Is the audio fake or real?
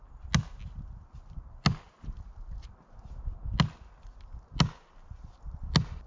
real